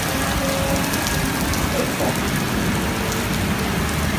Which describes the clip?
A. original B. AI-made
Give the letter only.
A